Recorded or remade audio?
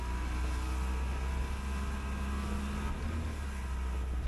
recorded